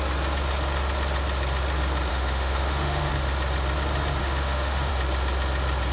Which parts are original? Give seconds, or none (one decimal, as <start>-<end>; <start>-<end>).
0.0-2.1; 3.1-4.2; 4.9-5.9